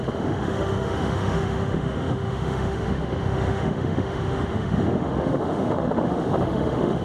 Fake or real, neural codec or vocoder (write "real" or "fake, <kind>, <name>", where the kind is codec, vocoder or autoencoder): fake, autoencoder, DAC-VAE